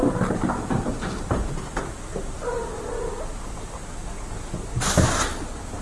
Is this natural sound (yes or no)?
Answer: yes